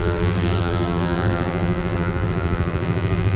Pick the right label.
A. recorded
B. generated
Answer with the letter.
B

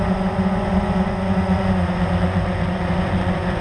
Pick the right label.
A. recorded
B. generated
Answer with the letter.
B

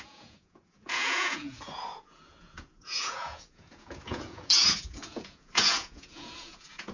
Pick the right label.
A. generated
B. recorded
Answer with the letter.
A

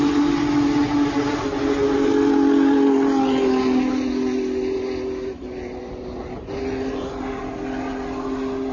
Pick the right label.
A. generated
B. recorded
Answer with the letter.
B